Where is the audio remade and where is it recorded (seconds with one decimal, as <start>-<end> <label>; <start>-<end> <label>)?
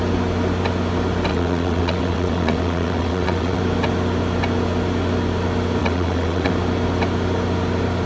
0.0-1.3 recorded; 1.3-3.6 remade; 3.6-5.8 recorded; 5.8-6.5 remade; 6.5-8.1 recorded